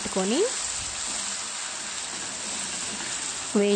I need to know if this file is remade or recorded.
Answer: recorded